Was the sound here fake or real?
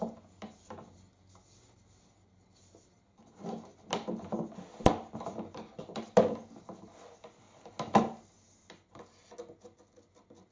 real